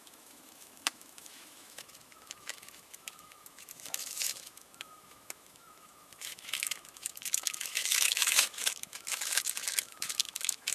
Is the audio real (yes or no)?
no